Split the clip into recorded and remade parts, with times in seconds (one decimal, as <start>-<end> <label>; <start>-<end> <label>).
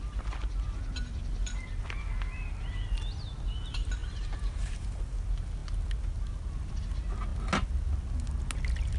0.0-4.0 recorded; 4.0-5.0 remade; 5.0-9.0 recorded